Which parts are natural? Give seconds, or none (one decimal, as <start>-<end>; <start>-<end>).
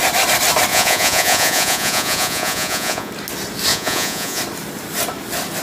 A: 0.0-0.7; 3.1-3.7; 4.4-5.6